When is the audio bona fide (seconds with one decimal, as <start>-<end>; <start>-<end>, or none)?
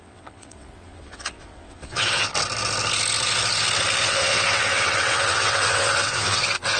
2.3-4.0